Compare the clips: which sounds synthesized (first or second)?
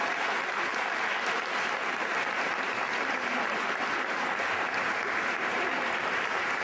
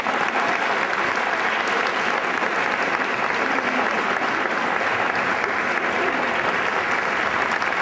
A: first